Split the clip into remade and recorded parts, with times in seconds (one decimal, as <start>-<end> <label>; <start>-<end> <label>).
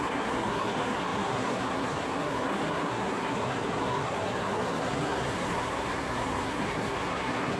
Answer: 0.0-7.6 remade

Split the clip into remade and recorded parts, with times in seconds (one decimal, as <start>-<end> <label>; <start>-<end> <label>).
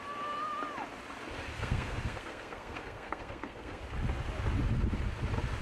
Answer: 0.0-1.5 recorded; 1.5-3.8 remade; 3.8-5.6 recorded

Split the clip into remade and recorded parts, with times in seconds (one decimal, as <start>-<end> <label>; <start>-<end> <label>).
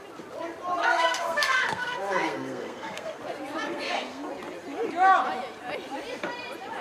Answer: 0.0-0.8 recorded; 0.8-3.2 remade; 3.2-3.7 recorded; 3.7-4.3 remade; 4.3-6.8 recorded